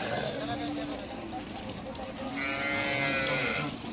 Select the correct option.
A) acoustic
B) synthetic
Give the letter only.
A